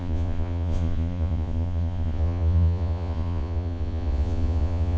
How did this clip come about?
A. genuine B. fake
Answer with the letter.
B